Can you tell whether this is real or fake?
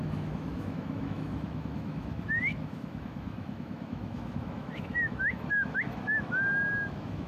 fake